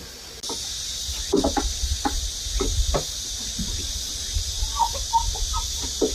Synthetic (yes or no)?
no